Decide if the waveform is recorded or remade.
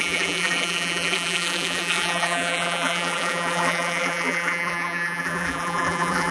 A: remade